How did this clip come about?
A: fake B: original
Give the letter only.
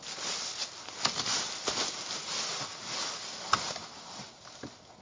B